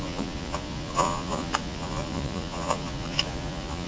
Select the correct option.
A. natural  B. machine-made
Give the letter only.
B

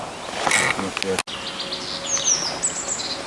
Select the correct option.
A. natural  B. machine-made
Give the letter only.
A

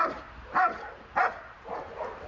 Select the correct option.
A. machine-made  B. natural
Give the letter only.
B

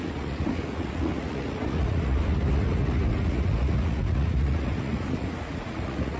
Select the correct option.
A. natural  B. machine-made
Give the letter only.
B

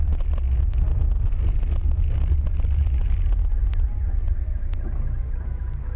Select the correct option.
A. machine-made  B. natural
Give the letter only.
B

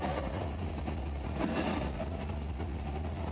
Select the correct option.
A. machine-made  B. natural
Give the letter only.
A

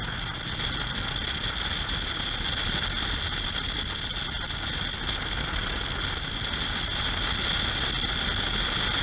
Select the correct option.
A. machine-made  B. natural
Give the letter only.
B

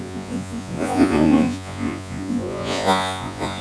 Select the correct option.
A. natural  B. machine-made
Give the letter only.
B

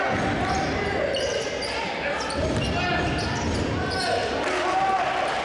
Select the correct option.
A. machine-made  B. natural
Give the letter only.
B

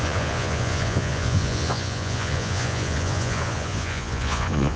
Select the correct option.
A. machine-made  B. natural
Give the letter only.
A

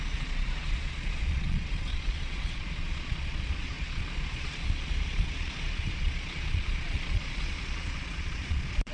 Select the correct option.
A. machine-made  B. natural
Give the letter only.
A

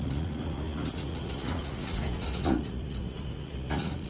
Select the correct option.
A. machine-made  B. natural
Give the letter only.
A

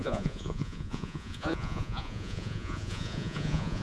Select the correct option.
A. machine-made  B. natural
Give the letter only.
A